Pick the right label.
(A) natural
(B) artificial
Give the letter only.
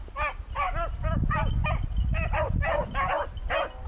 A